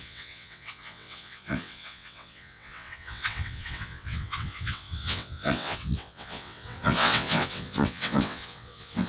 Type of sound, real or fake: fake